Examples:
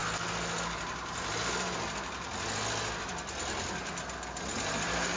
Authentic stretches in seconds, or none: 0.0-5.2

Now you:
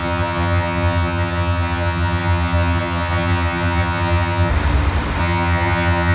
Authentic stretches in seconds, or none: 4.5-5.2

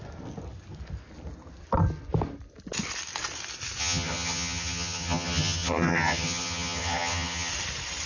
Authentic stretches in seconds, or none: 0.0-3.8; 7.5-8.1

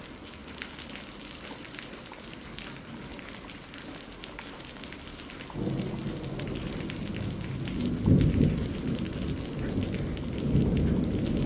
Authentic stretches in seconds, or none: 0.0-11.5